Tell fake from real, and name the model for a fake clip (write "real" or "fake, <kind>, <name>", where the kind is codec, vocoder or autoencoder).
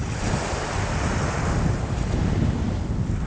real